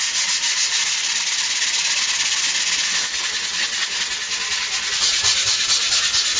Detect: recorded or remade recorded